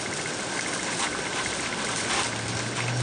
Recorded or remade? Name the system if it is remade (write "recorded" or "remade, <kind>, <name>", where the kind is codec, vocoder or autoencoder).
recorded